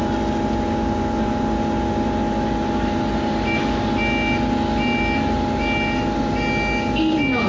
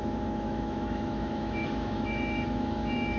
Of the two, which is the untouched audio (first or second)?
first